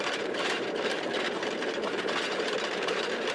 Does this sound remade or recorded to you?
remade